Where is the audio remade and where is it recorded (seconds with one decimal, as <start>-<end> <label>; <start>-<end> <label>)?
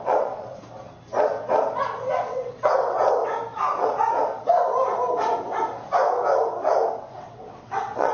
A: 0.0-0.6 remade; 0.6-2.2 recorded; 2.2-3.2 remade; 3.2-7.0 recorded; 7.0-8.1 remade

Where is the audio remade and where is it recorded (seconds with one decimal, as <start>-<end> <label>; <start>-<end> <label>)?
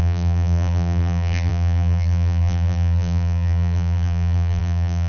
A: 0.0-5.1 remade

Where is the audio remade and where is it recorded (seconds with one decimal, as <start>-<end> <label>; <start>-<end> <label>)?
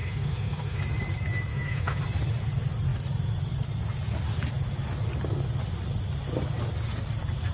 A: 0.0-0.8 remade; 0.8-1.5 recorded; 1.5-2.0 remade; 2.0-7.5 recorded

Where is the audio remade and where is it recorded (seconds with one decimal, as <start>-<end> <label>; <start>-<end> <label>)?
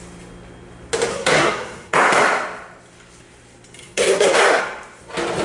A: 0.0-1.1 recorded; 1.1-2.0 remade; 2.0-3.8 recorded; 3.8-4.6 remade; 4.6-5.4 recorded